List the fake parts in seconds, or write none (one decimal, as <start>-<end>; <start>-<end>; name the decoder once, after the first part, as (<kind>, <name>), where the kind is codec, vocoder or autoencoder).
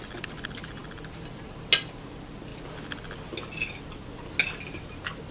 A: none